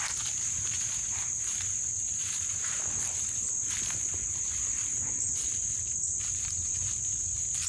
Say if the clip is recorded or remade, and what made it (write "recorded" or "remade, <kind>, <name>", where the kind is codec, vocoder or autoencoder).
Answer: recorded